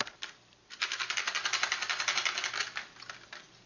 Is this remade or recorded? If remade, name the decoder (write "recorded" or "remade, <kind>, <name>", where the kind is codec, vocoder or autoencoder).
recorded